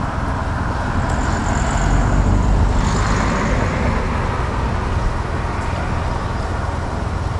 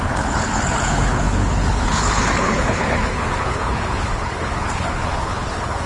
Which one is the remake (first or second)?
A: second